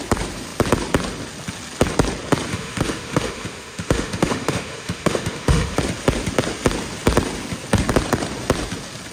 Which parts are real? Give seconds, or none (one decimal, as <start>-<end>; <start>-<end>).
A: 0.0-2.5; 5.8-9.1